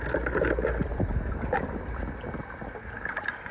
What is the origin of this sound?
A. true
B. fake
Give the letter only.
A